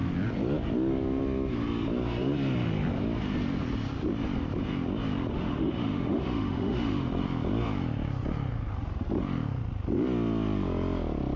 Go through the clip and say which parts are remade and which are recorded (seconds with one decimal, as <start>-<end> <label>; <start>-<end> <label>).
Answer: 0.0-5.3 recorded; 5.3-7.1 remade; 7.1-11.4 recorded